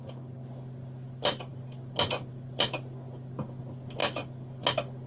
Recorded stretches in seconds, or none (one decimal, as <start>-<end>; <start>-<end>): 0.0-5.1